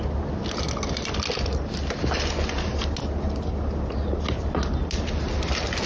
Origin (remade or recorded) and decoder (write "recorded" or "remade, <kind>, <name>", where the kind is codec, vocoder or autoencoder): recorded